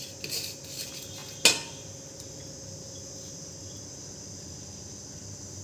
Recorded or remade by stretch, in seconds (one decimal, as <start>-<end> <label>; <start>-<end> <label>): 0.0-5.6 recorded